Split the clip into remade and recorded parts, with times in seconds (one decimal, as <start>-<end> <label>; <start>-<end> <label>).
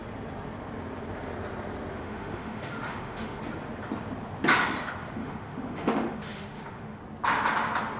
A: 0.0-1.9 recorded; 1.9-3.4 remade; 3.4-5.2 recorded; 5.2-7.0 remade; 7.0-8.0 recorded